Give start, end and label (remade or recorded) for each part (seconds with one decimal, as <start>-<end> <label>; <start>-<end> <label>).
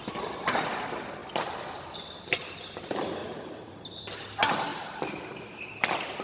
0.0-3.2 recorded; 3.2-3.8 remade; 3.8-6.2 recorded